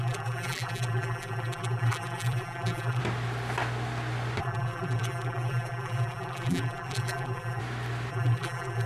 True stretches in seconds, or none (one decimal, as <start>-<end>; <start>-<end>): 3.0-4.4; 7.6-8.1